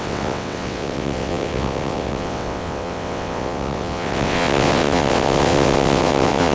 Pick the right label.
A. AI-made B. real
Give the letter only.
A